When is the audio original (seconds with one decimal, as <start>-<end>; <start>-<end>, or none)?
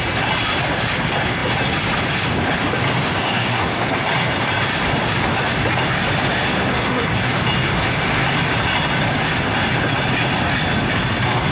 0.0-3.2; 3.7-6.7; 7.3-11.5